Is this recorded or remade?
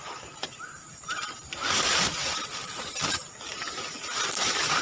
remade